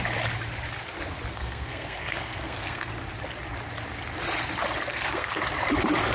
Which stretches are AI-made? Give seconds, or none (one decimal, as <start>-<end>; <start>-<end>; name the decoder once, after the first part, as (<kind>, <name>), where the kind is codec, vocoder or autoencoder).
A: 1.3-2.9 (codec, SNAC); 4.9-5.4